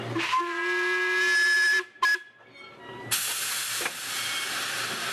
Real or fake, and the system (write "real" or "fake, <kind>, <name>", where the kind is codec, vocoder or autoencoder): real